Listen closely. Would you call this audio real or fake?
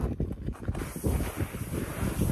real